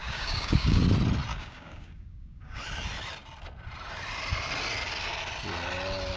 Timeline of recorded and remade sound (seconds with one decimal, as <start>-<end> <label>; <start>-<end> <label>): 0.0-0.8 remade; 0.8-1.3 recorded; 1.3-2.6 remade; 2.6-6.2 recorded